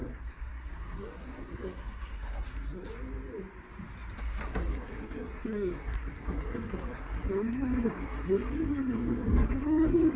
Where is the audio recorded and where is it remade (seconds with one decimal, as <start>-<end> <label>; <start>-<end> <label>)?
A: 0.0-2.9 remade; 2.9-4.2 recorded; 4.2-10.2 remade